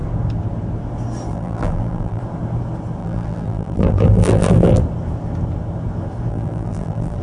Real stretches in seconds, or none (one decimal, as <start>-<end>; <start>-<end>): 0.0-1.3; 2.2-3.0; 4.8-6.3